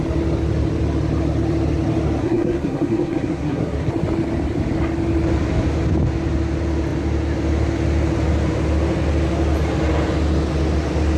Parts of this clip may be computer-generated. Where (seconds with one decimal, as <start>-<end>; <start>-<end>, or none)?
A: 2.2-3.9